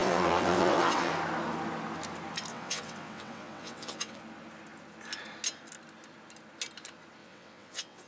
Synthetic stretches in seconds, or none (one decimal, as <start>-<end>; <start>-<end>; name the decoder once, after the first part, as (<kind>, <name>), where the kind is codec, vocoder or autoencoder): 0.0-1.1 (vocoder, WaveNeXt); 2.5-4.2; 7.2-8.1